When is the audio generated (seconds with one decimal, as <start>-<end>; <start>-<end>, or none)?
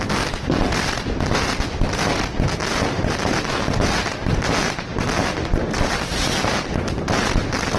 none